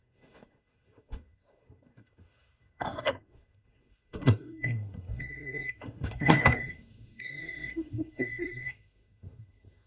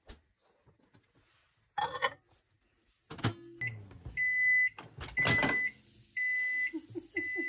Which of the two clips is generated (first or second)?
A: first